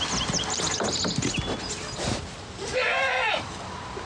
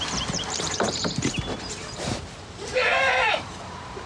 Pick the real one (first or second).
first